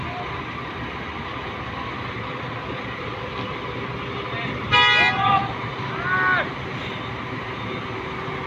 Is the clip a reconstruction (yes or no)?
no